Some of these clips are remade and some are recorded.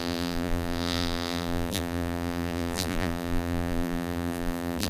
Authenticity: remade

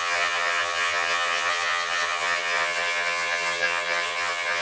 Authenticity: remade